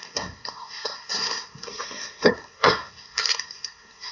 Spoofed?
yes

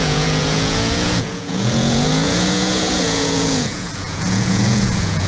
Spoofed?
yes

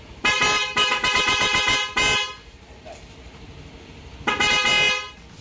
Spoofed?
no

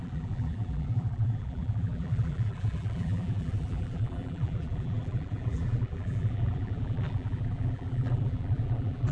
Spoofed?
yes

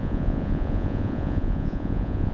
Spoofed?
yes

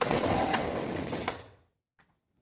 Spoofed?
yes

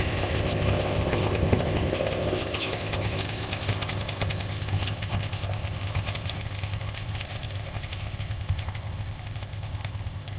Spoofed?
yes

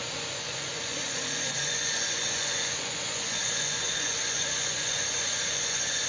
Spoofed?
yes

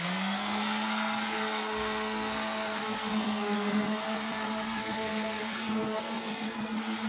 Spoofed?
yes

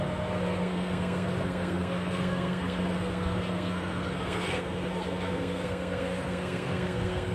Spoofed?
yes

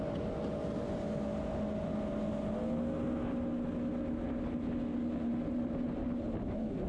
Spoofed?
no